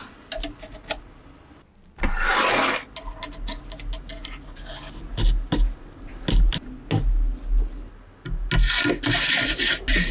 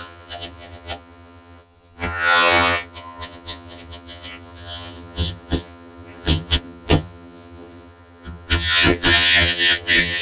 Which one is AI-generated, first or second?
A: second